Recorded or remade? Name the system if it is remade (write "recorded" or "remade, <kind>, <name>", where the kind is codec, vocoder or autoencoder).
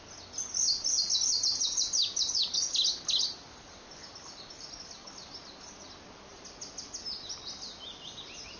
recorded